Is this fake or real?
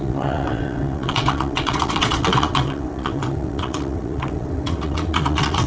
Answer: fake